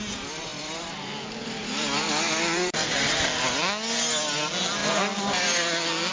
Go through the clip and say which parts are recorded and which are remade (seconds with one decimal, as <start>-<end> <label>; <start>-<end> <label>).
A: 0.0-0.5 recorded; 0.5-1.1 remade; 1.1-1.6 recorded; 1.6-3.1 remade; 3.1-6.1 recorded